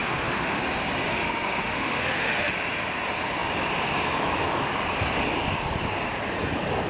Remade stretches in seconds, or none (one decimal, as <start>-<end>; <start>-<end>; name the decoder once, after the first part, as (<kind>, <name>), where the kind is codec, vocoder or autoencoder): 0.0-0.6 (autoencoder, DAC-VAE); 1.1-2.5